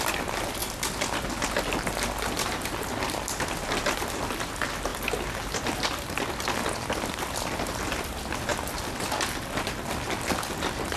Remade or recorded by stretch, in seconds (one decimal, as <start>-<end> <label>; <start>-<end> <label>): 0.0-11.0 recorded